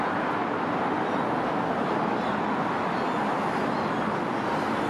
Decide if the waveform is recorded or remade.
recorded